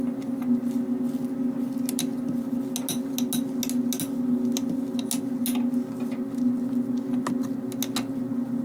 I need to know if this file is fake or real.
real